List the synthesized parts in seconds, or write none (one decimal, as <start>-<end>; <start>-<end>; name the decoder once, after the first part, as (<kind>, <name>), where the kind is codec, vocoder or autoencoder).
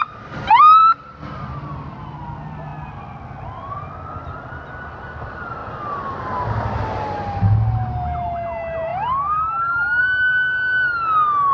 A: 0.8-2.2 (vocoder, BigVGAN v2)